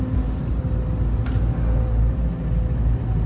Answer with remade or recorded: recorded